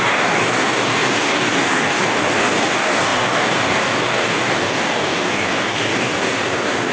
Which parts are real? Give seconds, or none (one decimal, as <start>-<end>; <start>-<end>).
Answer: none